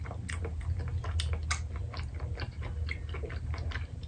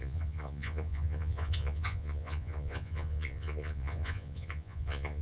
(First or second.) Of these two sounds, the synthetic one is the second